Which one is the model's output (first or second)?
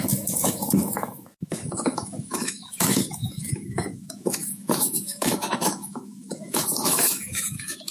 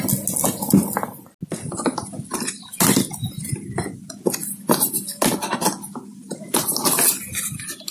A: first